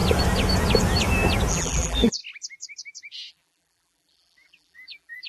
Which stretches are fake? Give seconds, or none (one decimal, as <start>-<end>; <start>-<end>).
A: 1.5-2.2; 3.3-5.3